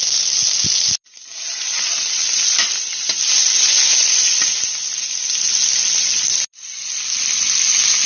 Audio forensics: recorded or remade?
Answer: recorded